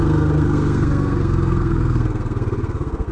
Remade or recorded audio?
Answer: remade